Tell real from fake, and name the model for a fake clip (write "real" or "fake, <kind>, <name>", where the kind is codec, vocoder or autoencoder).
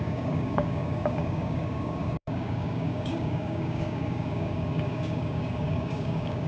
fake, codec, DAC